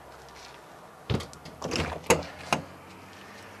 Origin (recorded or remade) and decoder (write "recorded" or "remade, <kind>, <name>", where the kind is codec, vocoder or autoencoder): recorded